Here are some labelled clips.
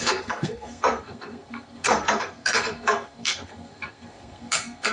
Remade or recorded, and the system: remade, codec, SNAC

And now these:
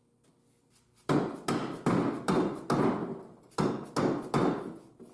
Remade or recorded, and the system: recorded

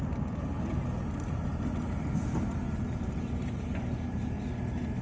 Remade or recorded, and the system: recorded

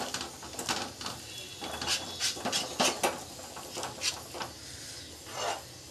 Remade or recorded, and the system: recorded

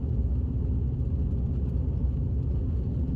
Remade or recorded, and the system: recorded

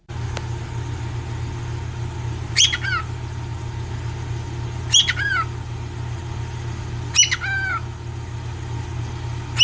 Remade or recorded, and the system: recorded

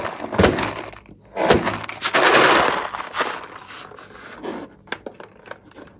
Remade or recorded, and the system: recorded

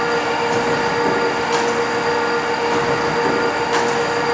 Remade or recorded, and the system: recorded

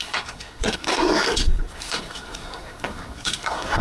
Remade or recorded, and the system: remade, codec, SNAC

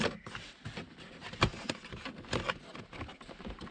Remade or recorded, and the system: recorded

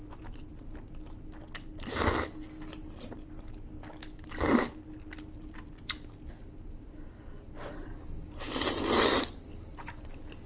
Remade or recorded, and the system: recorded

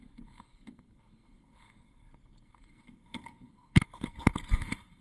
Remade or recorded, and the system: remade, codec, SNAC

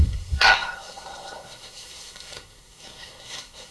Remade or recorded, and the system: remade, codec, SNAC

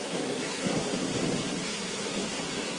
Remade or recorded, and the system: remade, codec, SNAC